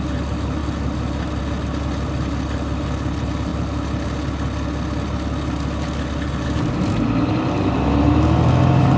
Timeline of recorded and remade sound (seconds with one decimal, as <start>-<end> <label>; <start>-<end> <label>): 0.0-9.0 recorded